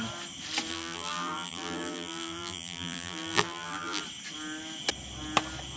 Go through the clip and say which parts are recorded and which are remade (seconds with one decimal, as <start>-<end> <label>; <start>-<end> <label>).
0.0-0.7 recorded; 0.7-4.0 remade; 4.0-5.8 recorded